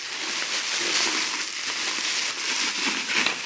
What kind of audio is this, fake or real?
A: real